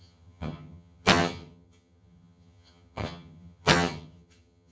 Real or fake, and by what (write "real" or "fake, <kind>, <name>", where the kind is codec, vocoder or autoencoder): fake, vocoder, HiFi-GAN